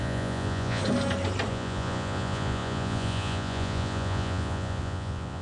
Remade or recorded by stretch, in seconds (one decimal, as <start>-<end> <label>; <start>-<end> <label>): 0.0-0.8 remade; 0.8-1.5 recorded; 1.5-5.4 remade